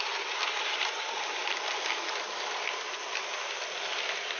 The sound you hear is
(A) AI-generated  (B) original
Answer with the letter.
B